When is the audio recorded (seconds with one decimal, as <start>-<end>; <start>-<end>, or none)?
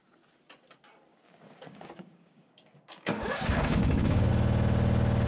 0.0-1.1; 4.3-5.3